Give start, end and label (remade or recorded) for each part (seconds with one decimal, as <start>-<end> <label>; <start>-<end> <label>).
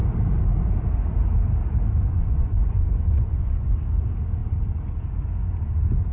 0.0-2.1 recorded; 2.1-3.7 remade; 3.7-6.1 recorded